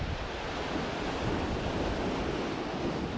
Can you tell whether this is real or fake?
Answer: real